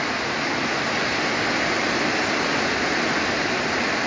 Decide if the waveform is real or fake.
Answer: real